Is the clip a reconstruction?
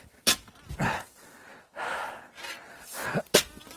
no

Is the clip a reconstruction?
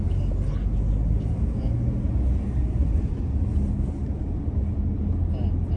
no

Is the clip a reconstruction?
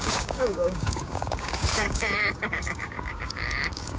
yes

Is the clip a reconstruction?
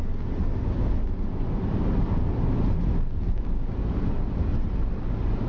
no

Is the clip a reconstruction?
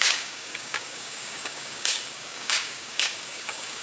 yes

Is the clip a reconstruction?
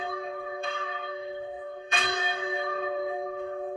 yes